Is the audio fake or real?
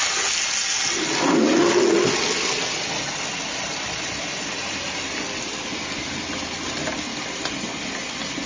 real